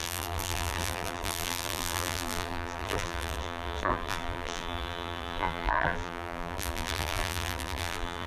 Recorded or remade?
remade